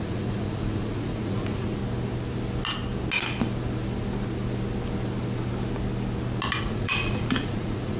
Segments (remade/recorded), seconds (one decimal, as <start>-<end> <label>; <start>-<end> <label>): 0.0-1.8 remade; 1.8-6.6 recorded; 6.6-8.0 remade